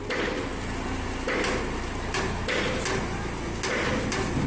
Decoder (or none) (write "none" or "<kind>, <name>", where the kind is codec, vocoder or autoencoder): none